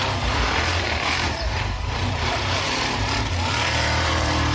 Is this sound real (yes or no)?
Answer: no